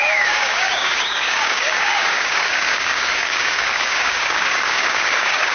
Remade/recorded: remade